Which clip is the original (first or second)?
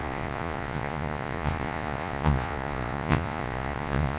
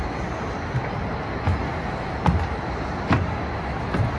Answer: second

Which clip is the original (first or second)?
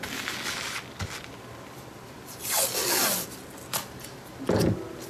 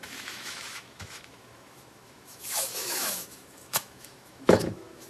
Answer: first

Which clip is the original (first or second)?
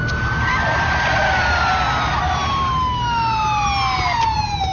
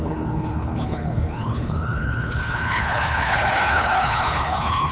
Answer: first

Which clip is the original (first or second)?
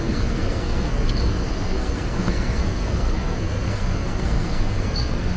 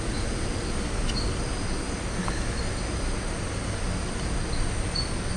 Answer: second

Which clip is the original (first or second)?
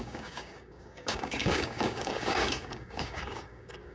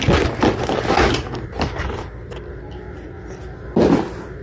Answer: second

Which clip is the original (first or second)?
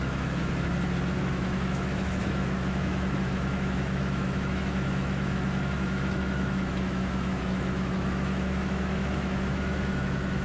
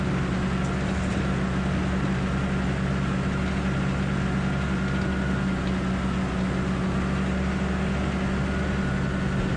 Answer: second